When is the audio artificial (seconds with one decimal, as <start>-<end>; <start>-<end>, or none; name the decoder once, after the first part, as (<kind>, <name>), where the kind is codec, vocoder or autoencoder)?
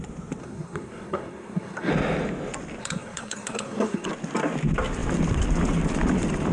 0.4-1.9 (codec, SNAC); 2.8-4.1